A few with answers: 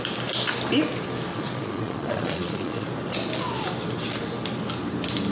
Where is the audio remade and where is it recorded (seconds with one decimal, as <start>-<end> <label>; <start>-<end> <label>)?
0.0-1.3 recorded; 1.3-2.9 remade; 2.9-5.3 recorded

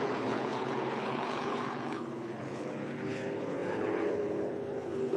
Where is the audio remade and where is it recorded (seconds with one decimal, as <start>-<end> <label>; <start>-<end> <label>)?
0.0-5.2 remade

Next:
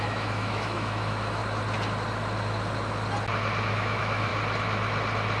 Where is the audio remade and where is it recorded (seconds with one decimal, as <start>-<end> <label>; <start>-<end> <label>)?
0.0-1.4 remade; 1.4-3.6 recorded; 3.6-4.3 remade; 4.3-5.4 recorded